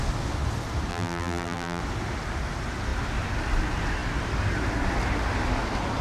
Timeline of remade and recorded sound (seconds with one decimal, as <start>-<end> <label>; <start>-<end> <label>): 0.0-0.9 recorded; 0.9-1.8 remade; 1.8-6.0 recorded